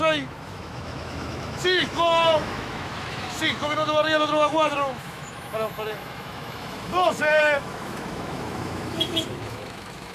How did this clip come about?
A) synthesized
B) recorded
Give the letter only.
A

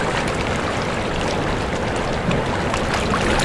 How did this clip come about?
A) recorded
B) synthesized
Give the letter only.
A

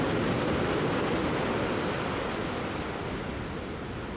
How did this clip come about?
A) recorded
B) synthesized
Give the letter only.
A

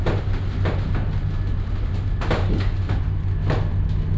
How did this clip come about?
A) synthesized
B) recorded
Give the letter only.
B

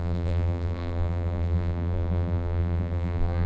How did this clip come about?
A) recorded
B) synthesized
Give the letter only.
B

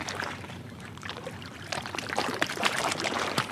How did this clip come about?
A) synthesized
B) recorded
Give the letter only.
A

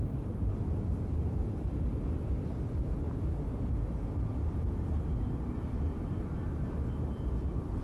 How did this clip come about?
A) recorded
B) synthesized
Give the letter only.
A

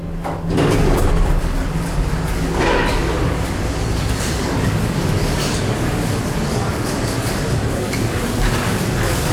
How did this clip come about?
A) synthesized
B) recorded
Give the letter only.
A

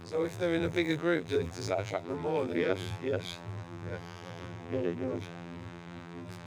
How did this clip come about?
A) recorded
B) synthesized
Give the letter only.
B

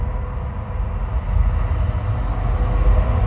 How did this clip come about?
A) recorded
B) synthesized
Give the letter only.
A